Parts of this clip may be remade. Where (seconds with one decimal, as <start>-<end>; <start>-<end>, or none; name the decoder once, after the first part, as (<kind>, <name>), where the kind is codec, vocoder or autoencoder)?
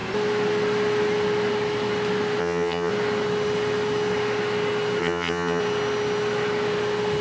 2.4-2.9 (vocoder, HiFi-GAN); 5.0-5.6